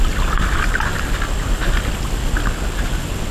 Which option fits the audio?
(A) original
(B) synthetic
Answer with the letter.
A